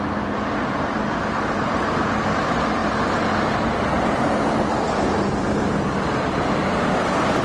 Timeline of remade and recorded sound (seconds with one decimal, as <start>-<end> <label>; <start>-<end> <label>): 0.0-7.4 recorded